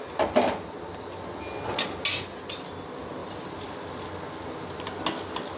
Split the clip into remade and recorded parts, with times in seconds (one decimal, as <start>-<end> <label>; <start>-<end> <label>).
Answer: 0.0-3.2 recorded; 3.2-3.9 remade; 3.9-5.6 recorded